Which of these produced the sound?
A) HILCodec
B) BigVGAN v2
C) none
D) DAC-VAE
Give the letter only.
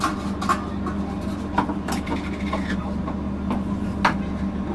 C